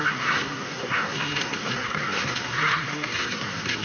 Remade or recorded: remade